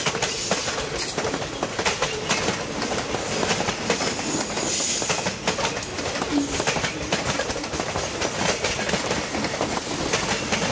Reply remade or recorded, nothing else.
recorded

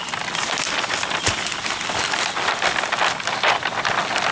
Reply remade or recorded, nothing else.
recorded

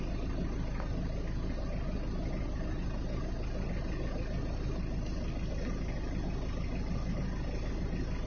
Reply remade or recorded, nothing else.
recorded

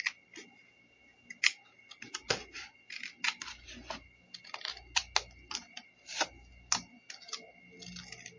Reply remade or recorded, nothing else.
recorded